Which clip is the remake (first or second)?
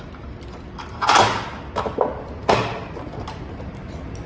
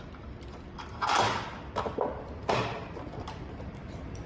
second